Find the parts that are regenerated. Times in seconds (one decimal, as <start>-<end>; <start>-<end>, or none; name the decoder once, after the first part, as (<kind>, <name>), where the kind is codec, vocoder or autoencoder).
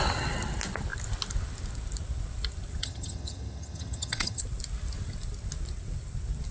2.8-4.4 (vocoder, HiFi-GAN)